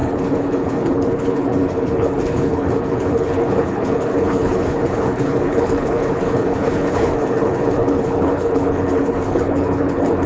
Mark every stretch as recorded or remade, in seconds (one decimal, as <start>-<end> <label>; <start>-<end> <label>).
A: 0.0-10.3 remade